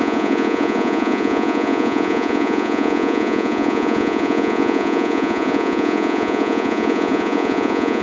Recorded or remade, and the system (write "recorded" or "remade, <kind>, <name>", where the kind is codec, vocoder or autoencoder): remade, vocoder, Vocos